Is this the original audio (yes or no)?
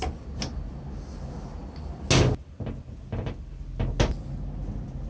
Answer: yes